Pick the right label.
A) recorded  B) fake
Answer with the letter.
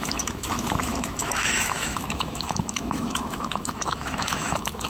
B